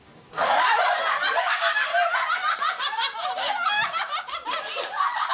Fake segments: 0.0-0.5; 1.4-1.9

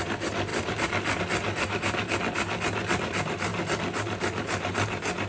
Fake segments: none

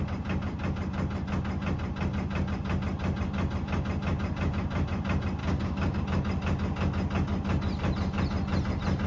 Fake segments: 5.4-6.0

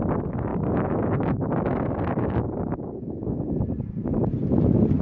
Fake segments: 0.5-3.5

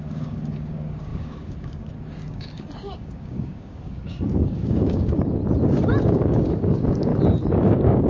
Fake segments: 0.0-5.4; 6.0-7.1; 7.6-8.1

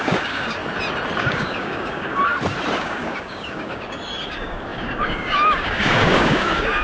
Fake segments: 0.0-0.6; 1.2-2.2; 2.8-6.8